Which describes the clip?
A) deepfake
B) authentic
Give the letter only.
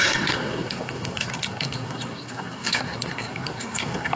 A